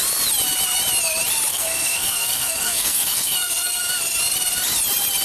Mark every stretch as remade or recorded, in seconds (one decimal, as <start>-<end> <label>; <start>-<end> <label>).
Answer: 0.0-1.5 recorded; 1.5-3.8 remade; 3.8-5.2 recorded

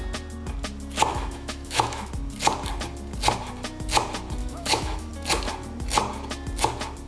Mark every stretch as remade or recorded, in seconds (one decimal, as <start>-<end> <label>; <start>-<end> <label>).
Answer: 0.0-1.1 recorded; 1.1-2.1 remade; 2.1-4.4 recorded; 4.4-5.1 remade; 5.1-7.1 recorded

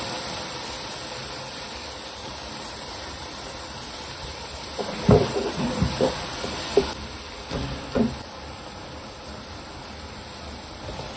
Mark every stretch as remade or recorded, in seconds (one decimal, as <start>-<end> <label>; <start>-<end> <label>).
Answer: 0.0-2.2 recorded; 2.2-6.1 remade; 6.1-11.2 recorded

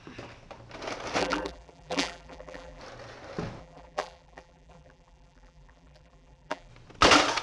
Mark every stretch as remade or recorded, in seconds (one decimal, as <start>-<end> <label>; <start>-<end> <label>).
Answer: 0.0-1.2 recorded; 1.2-2.8 remade; 2.8-3.6 recorded; 3.6-6.7 remade; 6.7-7.4 recorded

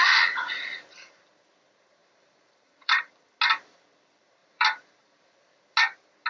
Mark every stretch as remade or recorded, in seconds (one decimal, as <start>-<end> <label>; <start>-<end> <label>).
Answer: 0.0-2.0 recorded; 2.0-3.1 remade; 3.1-4.4 recorded; 4.4-5.6 remade; 5.6-6.3 recorded

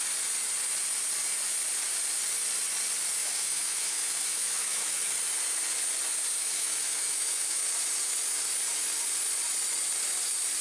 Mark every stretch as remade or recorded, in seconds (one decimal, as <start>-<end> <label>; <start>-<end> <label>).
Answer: 0.0-3.2 recorded; 3.2-5.1 remade; 5.1-6.4 recorded; 6.4-7.6 remade; 7.6-10.6 recorded